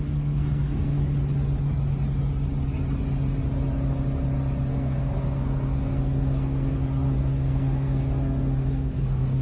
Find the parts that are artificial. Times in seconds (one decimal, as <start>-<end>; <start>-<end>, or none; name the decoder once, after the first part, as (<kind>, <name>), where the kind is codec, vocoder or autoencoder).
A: 0.0-1.0 (codec, SNAC); 4.7-9.4